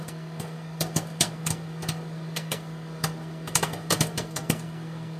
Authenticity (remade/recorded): remade